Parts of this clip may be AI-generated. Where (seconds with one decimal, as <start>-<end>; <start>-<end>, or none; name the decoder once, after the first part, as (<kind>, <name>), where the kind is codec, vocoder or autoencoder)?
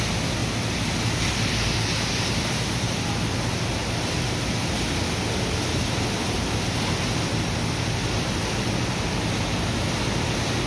none